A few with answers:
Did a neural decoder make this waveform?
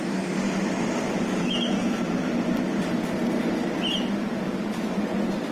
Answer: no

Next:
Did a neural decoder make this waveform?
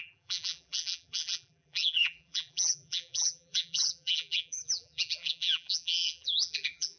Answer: yes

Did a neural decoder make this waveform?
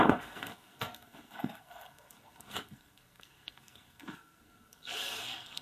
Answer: yes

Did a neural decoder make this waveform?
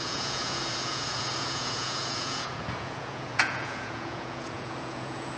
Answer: yes